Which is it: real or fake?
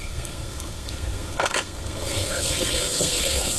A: fake